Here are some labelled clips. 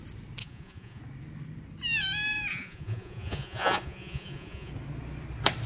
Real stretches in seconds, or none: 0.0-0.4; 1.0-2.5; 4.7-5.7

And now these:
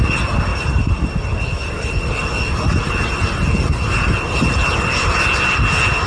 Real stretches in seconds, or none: 0.0-0.5; 1.0-6.1